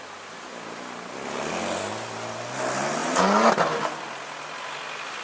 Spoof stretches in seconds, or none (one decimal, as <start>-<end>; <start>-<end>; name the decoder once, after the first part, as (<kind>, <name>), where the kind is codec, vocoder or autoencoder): none